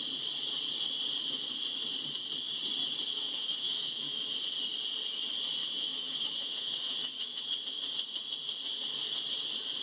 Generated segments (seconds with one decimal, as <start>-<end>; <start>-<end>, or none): 3.2-4.4; 5.6-7.6